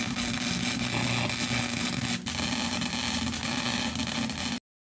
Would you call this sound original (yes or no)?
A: yes